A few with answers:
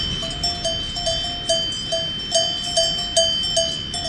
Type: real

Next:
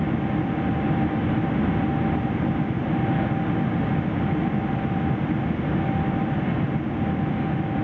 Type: real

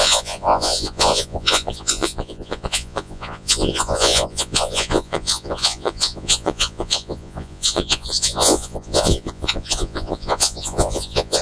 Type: fake